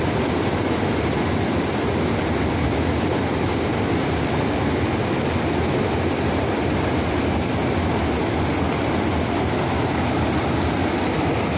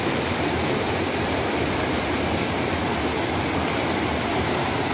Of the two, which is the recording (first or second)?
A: first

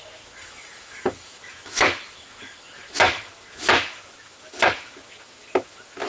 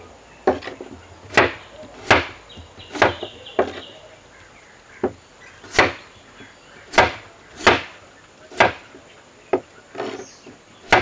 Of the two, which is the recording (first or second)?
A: second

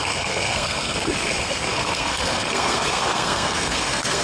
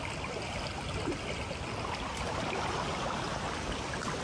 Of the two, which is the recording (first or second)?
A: second